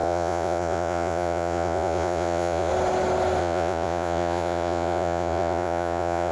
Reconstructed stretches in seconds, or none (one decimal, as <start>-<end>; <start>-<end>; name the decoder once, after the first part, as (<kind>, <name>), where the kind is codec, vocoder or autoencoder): 0.0-2.7 (vocoder, Vocos); 3.4-6.3